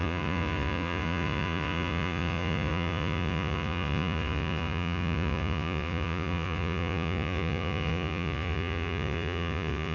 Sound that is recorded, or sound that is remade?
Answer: remade